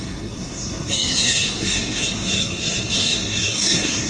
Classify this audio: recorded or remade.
remade